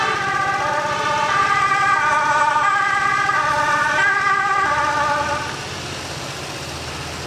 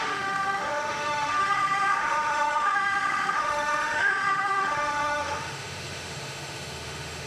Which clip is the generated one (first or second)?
second